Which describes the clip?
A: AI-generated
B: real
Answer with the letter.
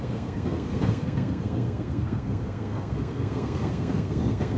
A